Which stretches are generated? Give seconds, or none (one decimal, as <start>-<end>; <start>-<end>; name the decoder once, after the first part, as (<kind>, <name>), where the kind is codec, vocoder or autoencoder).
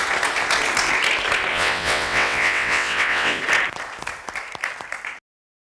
1.5-3.4 (vocoder, WaveNeXt)